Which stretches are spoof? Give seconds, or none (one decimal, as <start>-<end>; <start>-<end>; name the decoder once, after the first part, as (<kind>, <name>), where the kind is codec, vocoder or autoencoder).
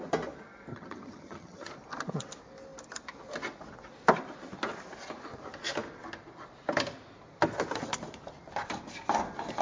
0.7-1.7 (vocoder, HiFi-GAN)